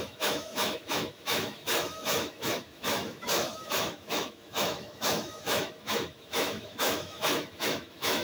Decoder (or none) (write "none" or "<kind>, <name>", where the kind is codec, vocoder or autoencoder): autoencoder, DAC-VAE